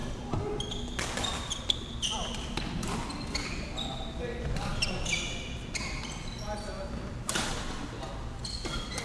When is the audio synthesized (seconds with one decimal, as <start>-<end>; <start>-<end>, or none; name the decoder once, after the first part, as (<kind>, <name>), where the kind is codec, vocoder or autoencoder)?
none